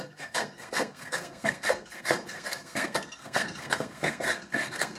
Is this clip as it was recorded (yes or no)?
no